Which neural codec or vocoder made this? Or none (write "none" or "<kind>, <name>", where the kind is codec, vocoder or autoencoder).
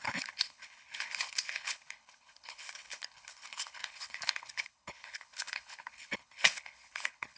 codec, HILCodec